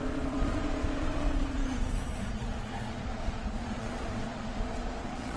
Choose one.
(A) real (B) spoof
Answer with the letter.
B